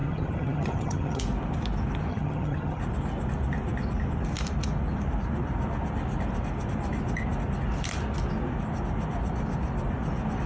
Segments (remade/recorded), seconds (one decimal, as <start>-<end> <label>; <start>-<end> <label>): 0.0-1.2 remade; 1.2-2.1 recorded; 2.1-2.8 remade; 2.8-10.5 recorded